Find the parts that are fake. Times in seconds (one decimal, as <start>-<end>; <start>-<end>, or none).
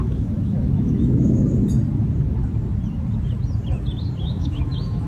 0.0-1.4; 4.2-5.1